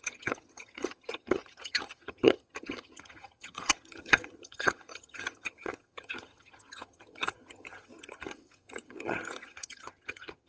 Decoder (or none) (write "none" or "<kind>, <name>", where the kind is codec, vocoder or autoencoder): vocoder, HiFi-GAN